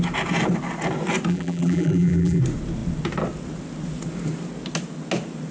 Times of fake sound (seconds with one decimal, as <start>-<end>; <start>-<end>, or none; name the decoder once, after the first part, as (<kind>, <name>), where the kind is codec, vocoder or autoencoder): 1.3-2.4 (vocoder, BigVGAN v2)